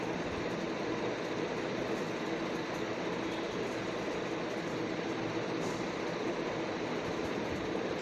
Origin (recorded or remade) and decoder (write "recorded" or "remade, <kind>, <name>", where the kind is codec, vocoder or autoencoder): recorded